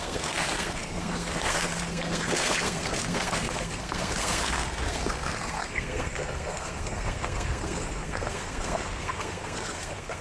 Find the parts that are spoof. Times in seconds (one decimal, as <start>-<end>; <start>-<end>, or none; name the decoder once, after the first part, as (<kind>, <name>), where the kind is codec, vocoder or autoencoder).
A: 0.0-10.2 (codec, SNAC)